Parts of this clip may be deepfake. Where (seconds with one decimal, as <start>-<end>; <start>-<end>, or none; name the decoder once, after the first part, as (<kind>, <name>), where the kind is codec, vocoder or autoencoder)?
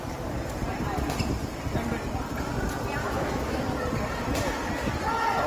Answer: 3.0-3.6 (autoencoder, DAC-VAE)